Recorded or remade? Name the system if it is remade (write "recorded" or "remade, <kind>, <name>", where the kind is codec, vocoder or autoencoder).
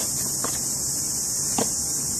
recorded